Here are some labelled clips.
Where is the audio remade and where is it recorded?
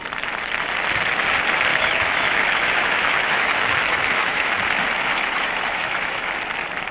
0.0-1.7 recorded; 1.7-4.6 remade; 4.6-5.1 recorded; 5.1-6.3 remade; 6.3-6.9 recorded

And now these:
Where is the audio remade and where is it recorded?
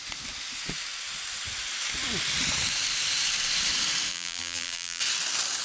0.0-4.1 recorded; 4.1-5.0 remade; 5.0-5.6 recorded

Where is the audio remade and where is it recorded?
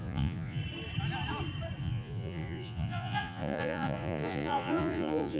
0.0-0.6 remade; 0.6-1.8 recorded; 1.8-5.4 remade